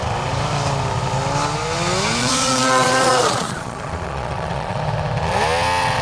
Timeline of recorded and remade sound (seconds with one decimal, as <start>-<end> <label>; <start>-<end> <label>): 0.0-2.2 recorded; 2.2-4.8 remade; 4.8-6.0 recorded